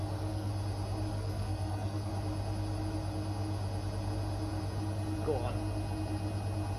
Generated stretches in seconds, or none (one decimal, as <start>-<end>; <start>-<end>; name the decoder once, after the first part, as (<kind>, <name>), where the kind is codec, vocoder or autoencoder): 0.0-0.5 (codec, SNAC); 1.1-2.1